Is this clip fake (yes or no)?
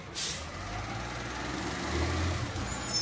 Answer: no